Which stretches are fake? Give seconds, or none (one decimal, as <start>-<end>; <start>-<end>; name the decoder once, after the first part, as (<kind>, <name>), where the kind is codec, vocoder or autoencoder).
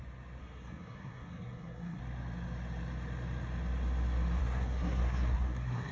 0.4-2.0 (codec, SNAC); 4.4-5.9